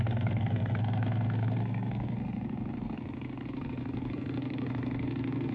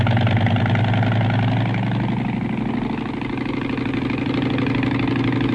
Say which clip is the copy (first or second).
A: first